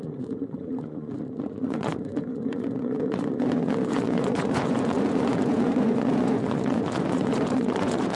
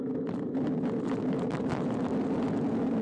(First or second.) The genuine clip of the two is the second